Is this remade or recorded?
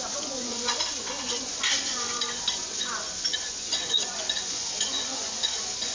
remade